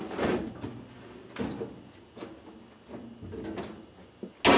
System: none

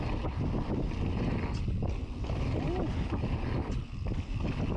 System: none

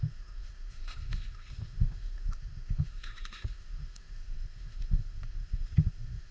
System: autoencoder, DAC-VAE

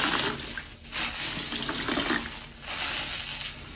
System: none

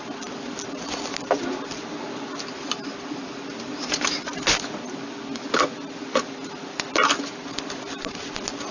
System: none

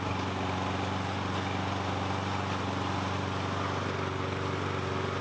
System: none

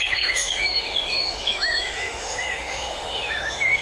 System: autoencoder, DAC-VAE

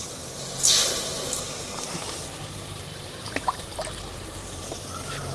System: vocoder, BigVGAN v2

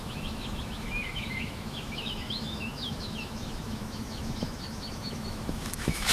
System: autoencoder, DAC-VAE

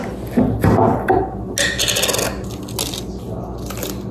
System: none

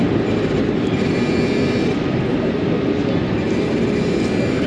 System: none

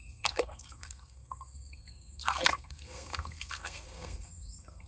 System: codec, SNAC